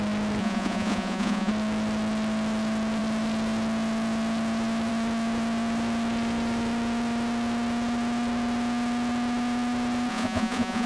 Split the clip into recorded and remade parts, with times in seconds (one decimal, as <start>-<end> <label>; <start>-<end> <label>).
0.0-0.4 recorded; 0.4-1.5 remade; 1.5-10.1 recorded; 10.1-10.9 remade

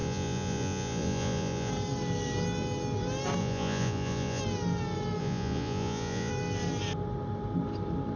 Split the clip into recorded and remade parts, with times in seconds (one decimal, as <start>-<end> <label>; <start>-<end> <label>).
0.0-1.7 remade; 1.7-3.4 recorded; 3.4-4.4 remade; 4.4-5.2 recorded; 5.2-6.3 remade; 6.3-8.2 recorded

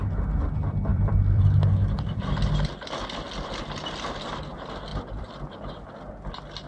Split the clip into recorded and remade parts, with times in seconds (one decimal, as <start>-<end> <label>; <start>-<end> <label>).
0.0-0.9 recorded; 0.9-1.4 remade; 1.4-4.9 recorded; 4.9-6.3 remade; 6.3-6.7 recorded

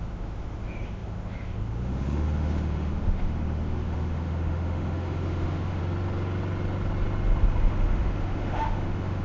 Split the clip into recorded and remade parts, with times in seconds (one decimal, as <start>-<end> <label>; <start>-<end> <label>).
0.0-5.8 remade; 5.8-7.6 recorded; 7.6-9.2 remade